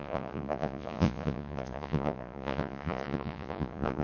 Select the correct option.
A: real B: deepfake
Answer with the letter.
B